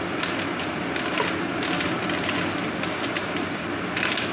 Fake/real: real